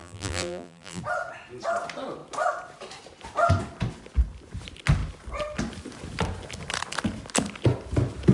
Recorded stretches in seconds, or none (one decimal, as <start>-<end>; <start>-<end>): 1.0-8.3